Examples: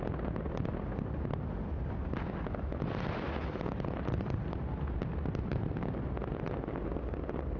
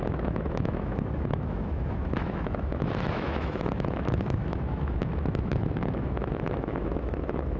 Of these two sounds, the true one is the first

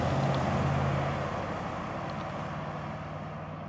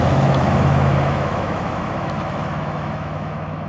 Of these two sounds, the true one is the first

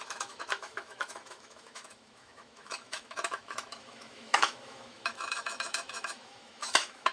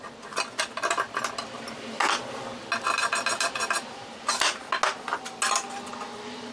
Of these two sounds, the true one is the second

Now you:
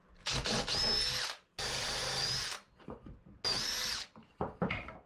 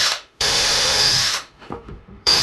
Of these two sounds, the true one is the first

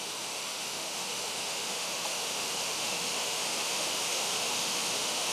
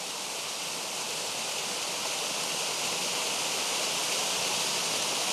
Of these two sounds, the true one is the second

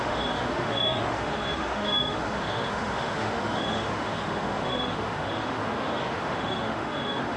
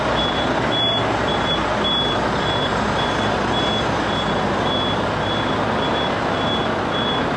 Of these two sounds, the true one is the second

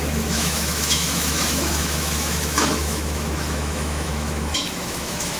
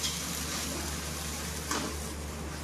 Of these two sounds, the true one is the second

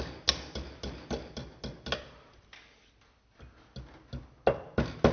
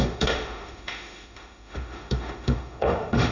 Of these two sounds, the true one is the first